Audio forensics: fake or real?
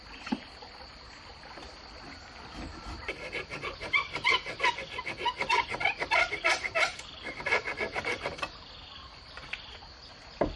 real